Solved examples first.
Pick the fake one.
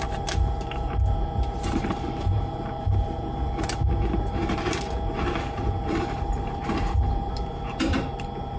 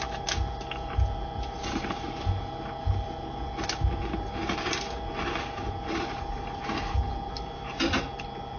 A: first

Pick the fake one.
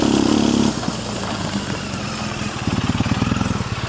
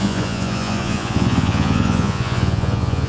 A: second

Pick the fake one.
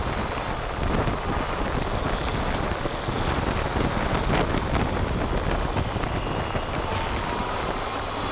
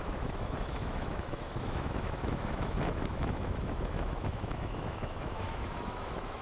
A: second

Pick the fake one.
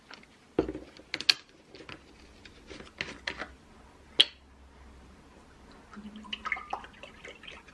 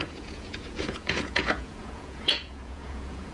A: second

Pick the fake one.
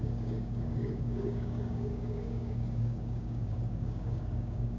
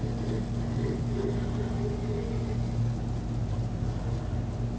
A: first